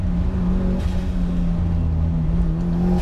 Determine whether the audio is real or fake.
real